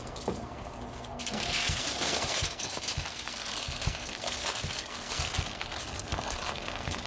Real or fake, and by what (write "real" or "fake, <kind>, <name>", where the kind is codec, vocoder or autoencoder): fake, codec, SNAC